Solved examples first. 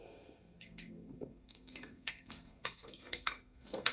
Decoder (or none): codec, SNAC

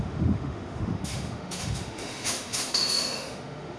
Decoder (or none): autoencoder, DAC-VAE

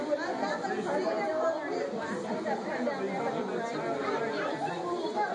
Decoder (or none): none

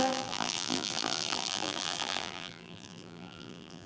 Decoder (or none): vocoder, BigVGAN v2